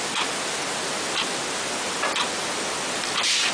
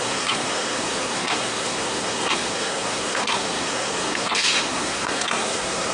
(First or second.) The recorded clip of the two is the first